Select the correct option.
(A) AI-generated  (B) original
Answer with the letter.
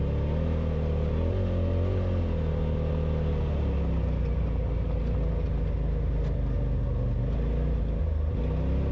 B